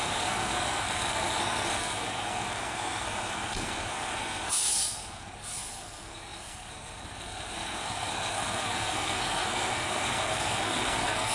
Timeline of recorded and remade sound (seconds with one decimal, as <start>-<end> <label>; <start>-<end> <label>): 0.0-11.3 remade